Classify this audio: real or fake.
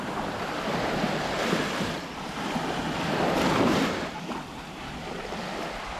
real